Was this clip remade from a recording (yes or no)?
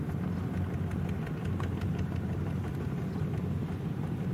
no